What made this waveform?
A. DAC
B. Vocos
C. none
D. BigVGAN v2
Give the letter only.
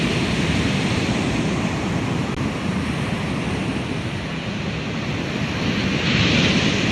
C